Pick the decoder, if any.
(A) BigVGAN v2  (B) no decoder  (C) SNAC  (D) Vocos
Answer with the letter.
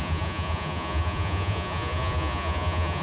D